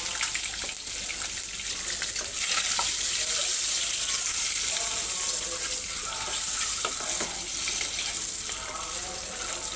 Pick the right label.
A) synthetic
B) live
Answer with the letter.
B